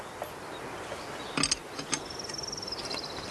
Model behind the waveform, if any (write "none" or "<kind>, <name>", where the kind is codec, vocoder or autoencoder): none